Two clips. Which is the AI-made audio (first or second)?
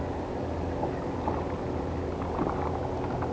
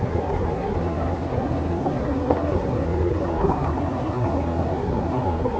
second